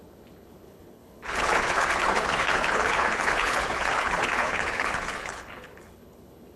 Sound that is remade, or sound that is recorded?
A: remade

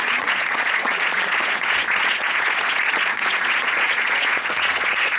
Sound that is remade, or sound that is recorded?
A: remade